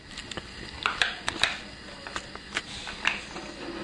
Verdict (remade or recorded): recorded